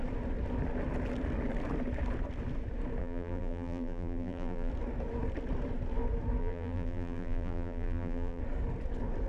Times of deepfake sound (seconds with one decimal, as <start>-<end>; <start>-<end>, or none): 3.0-4.7; 6.4-8.4